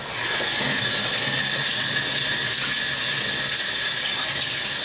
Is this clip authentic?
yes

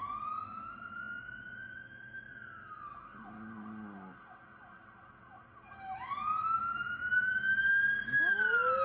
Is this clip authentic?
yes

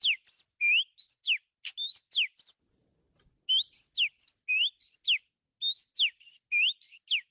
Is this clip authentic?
yes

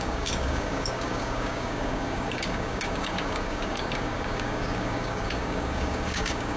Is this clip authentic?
no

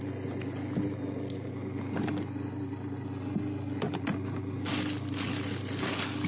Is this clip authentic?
yes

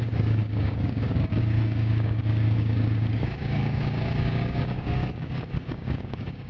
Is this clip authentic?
no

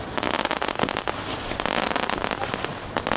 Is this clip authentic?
yes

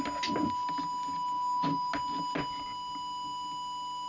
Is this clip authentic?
yes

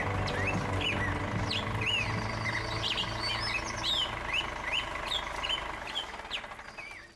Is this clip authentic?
yes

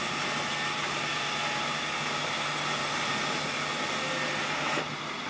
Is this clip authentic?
yes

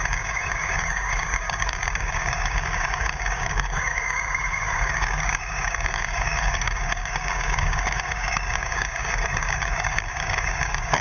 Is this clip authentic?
no